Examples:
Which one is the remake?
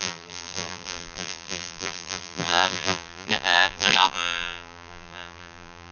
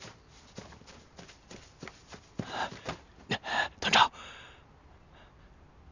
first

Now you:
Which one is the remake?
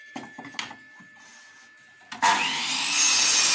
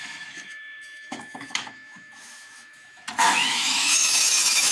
second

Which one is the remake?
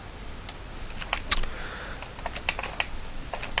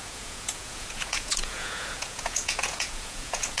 second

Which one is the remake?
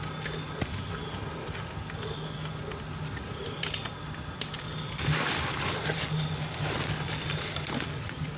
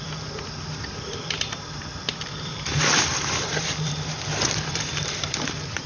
second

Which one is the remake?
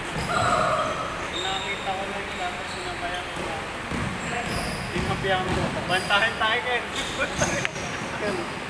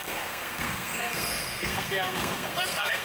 second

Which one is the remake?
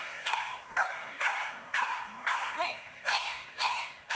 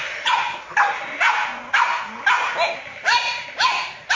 first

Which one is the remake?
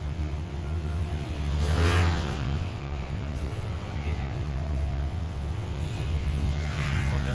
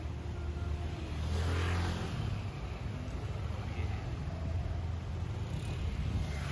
first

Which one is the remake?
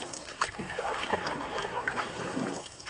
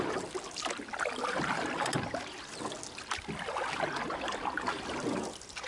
first